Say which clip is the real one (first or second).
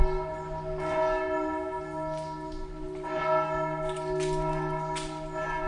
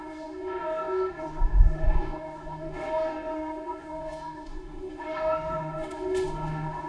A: first